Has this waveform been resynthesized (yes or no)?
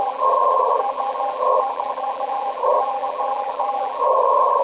yes